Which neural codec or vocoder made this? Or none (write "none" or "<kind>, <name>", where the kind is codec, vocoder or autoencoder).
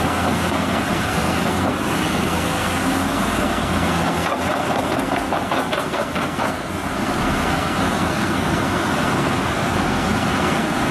codec, SNAC